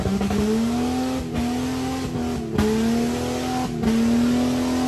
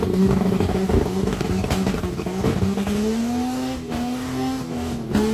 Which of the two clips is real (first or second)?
first